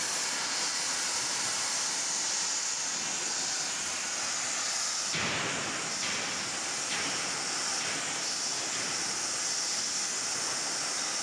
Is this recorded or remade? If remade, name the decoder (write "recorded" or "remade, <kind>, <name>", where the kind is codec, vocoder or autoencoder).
recorded